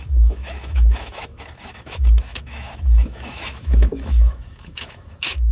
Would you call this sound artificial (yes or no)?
yes